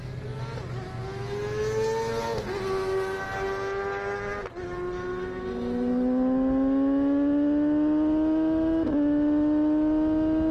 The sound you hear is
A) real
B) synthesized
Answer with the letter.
A